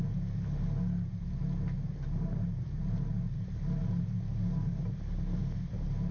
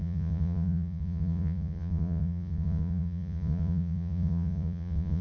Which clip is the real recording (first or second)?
first